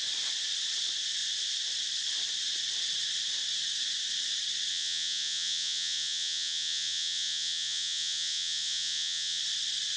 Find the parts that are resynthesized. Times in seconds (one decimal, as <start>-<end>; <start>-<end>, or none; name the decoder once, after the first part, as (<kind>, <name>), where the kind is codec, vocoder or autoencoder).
4.7-9.4 (vocoder, Vocos)